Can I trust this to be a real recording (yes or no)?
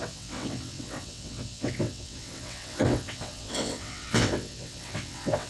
no